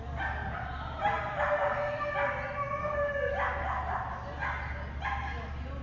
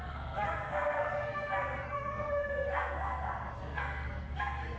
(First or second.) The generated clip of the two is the second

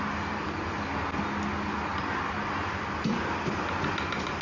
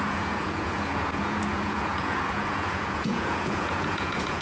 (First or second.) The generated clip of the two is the second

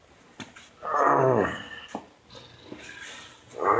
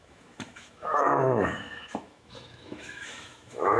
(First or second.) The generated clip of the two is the second